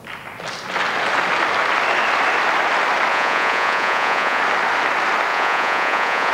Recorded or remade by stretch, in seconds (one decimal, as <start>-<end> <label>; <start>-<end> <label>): 0.0-3.1 recorded; 3.1-4.4 remade; 4.4-5.3 recorded; 5.3-6.3 remade